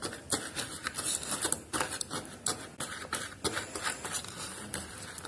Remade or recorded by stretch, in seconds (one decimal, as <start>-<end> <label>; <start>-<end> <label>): 0.0-5.3 recorded